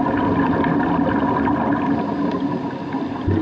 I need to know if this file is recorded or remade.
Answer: recorded